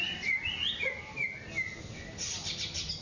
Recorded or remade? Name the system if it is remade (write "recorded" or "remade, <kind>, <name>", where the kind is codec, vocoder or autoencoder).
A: recorded